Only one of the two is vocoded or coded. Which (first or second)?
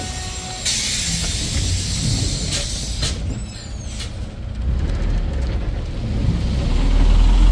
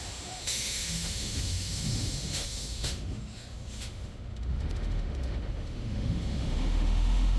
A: second